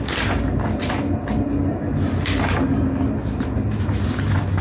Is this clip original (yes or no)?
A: yes